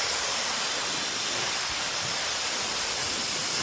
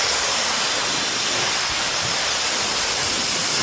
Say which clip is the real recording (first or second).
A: second